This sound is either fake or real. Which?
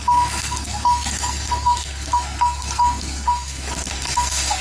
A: fake